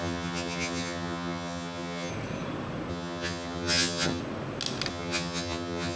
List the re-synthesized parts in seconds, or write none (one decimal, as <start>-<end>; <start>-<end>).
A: 0.0-2.1; 2.9-4.2; 4.9-6.0